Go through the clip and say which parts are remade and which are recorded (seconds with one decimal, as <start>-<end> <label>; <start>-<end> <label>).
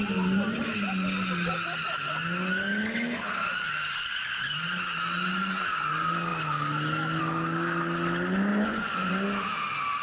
0.0-8.5 recorded; 8.5-9.1 remade; 9.1-10.0 recorded